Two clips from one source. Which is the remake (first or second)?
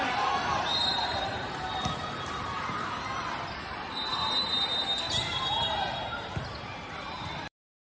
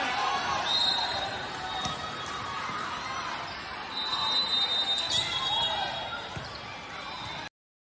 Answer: first